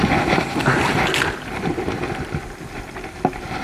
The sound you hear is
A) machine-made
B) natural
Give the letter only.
B